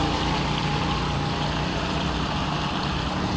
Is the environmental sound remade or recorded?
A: recorded